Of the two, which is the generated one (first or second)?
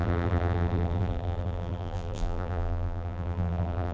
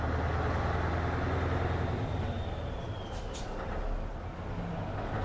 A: first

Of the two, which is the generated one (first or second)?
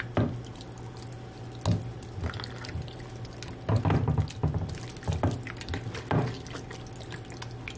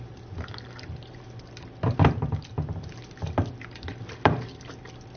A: second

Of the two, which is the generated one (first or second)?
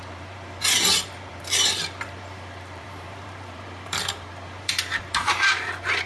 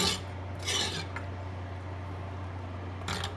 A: first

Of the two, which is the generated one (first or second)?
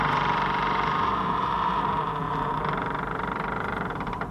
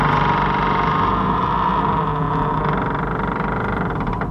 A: first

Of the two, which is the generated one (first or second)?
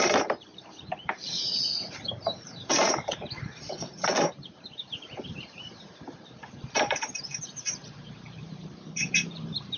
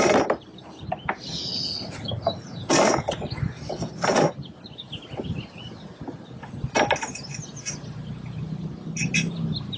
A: first